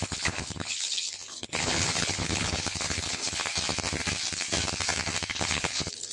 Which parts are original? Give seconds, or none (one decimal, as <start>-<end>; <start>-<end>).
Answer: 3.5-5.3